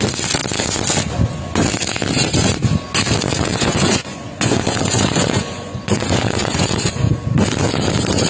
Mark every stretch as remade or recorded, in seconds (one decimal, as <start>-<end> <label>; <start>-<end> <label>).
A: 0.0-3.5 recorded; 3.5-6.7 remade; 6.7-8.3 recorded